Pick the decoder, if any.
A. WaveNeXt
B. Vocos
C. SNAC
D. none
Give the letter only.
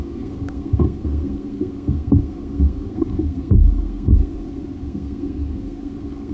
C